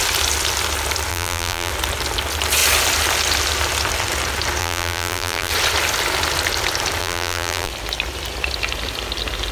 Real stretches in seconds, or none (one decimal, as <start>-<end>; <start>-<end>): 0.0-1.1; 1.7-4.6; 5.5-7.0; 7.7-9.5